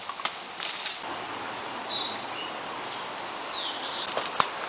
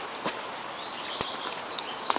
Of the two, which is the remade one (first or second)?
second